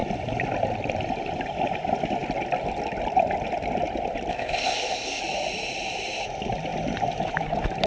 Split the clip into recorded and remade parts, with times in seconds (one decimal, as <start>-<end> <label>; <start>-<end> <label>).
0.0-4.3 recorded; 4.3-5.2 remade; 5.2-7.9 recorded